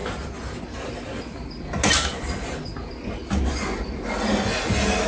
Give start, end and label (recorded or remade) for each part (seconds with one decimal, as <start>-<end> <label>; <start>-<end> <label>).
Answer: 0.0-5.1 recorded